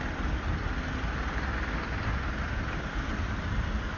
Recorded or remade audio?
recorded